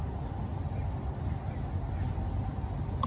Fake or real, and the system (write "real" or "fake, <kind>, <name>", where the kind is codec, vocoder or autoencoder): real